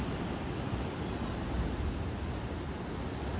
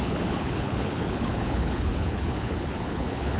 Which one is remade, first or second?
second